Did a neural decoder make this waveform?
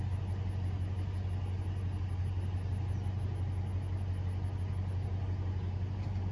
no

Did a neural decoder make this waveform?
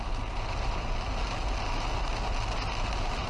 no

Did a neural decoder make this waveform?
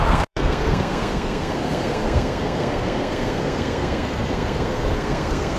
yes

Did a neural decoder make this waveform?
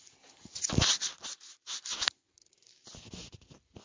no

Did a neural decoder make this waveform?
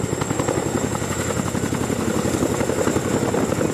no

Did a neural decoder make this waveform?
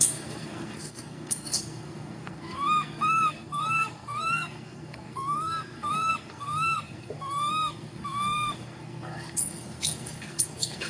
yes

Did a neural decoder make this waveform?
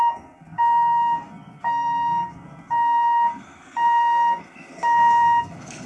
yes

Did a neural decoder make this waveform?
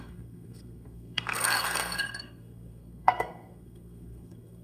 yes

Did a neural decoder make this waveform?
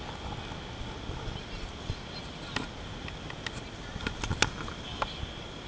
no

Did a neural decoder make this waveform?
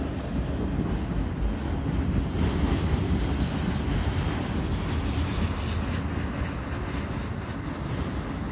no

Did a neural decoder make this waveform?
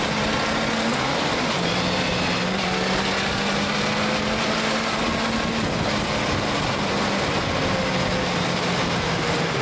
no